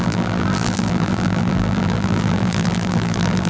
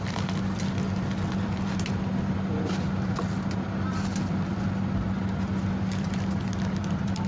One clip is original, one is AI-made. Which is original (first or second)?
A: second